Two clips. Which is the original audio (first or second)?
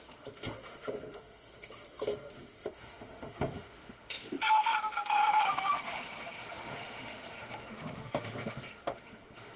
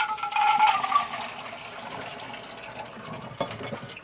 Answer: second